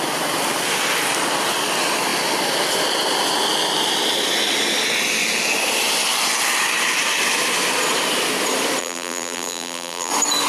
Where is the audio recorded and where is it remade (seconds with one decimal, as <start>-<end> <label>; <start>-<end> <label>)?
0.0-8.8 recorded; 8.8-10.1 remade; 10.1-10.5 recorded